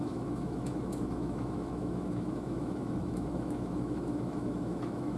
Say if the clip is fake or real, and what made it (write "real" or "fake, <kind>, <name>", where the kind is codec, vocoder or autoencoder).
fake, autoencoder, DAC-VAE